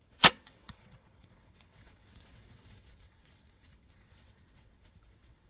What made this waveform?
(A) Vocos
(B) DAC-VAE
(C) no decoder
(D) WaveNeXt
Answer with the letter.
D